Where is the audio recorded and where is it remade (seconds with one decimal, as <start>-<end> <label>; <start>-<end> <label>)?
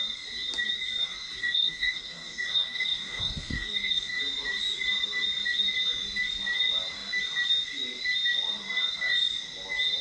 0.0-1.4 recorded; 1.4-4.2 remade; 4.2-10.0 recorded